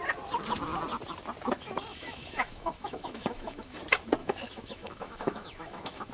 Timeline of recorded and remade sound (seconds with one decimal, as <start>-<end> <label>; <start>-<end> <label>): 0.0-1.9 recorded; 1.9-3.8 remade; 3.8-4.2 recorded; 4.2-6.1 remade